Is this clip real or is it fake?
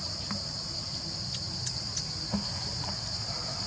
real